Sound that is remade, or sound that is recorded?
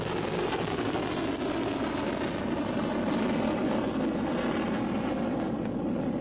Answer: recorded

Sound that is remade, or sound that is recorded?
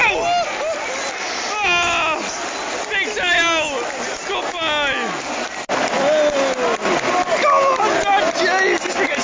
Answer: recorded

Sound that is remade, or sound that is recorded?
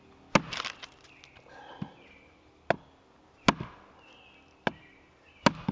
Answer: recorded